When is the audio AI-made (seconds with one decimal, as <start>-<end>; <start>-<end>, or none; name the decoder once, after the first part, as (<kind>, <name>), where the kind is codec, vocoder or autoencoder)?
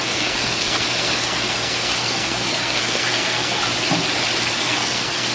0.0-3.6 (codec, SNAC); 4.6-5.3